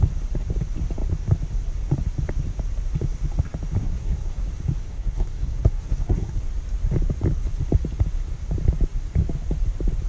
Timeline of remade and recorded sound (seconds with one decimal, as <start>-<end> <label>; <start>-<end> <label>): 0.0-3.8 recorded; 3.8-4.4 remade; 4.4-4.9 recorded; 4.9-6.4 remade; 6.4-10.1 recorded